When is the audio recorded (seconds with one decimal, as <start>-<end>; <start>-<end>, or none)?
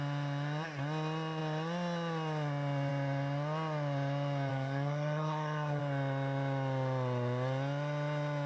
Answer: 0.0-4.5; 5.8-8.5